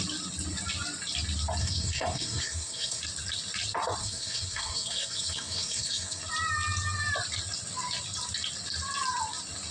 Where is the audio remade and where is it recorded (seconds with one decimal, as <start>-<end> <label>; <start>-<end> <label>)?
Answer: 0.0-1.6 recorded; 1.6-3.0 remade; 3.0-4.0 recorded; 4.0-6.2 remade; 6.2-9.7 recorded